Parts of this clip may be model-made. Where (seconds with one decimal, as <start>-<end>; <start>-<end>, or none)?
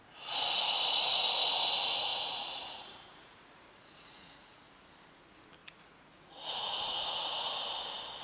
2.1-4.7; 5.6-7.5